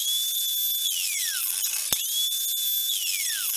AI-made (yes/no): no